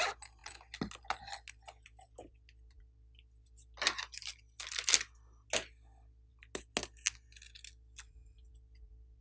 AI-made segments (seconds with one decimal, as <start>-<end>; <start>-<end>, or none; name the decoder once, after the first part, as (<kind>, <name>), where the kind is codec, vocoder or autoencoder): none